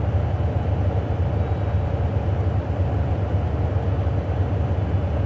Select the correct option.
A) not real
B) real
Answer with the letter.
B